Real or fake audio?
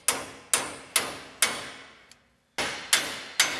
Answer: real